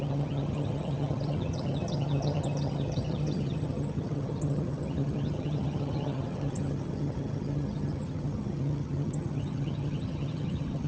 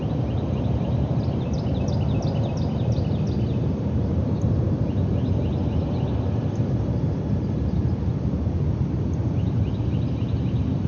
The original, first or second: second